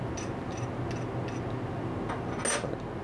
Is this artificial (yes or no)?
no